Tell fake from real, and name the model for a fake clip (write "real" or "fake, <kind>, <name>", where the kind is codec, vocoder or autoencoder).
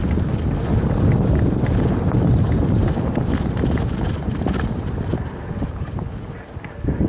real